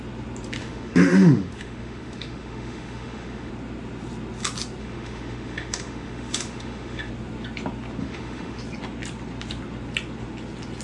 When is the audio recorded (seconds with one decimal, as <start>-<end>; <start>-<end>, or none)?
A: 0.0-0.6; 3.5-4.8; 7.1-8.0; 8.6-10.8